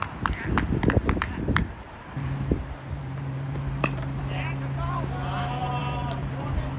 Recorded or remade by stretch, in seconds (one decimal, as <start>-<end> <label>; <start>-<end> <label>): 0.0-1.6 recorded; 1.6-4.2 remade; 4.2-5.6 recorded; 5.6-6.8 remade